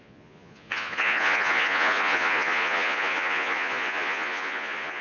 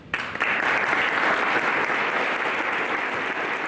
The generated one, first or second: first